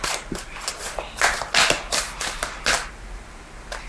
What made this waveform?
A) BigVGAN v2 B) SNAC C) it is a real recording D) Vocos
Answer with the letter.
C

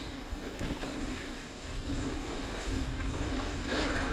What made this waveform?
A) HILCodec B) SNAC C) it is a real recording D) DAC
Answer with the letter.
D